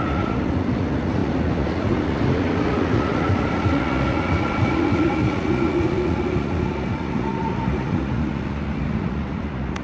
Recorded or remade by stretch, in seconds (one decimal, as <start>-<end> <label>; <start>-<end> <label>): 0.0-9.8 remade